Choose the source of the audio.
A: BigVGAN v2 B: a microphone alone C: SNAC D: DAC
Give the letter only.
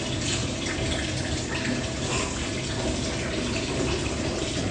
B